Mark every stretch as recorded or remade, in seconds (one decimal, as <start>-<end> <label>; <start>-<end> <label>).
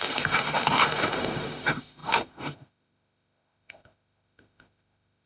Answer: 0.0-5.3 remade